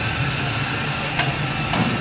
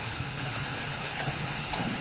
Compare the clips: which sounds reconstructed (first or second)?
second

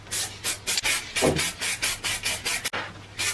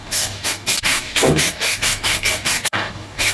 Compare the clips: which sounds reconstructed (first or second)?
second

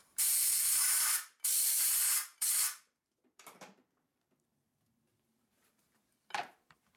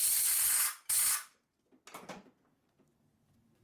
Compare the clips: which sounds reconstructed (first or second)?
first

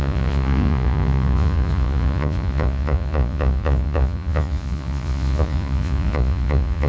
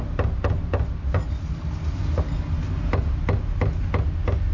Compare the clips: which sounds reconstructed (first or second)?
first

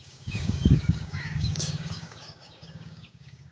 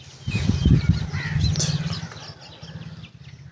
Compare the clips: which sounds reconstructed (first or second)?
first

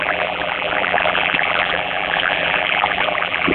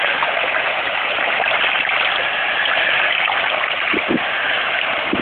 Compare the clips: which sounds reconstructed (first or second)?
first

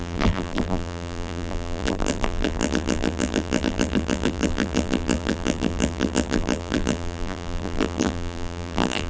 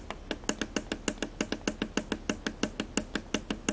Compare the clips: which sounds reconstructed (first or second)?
first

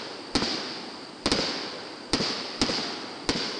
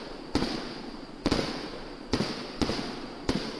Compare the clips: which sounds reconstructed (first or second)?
second